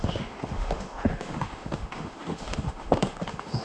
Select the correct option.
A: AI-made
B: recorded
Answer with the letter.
A